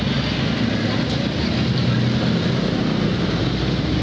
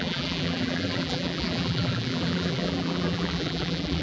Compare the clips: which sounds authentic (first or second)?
first